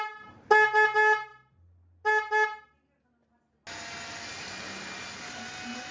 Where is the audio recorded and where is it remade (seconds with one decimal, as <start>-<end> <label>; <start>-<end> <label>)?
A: 0.0-5.9 recorded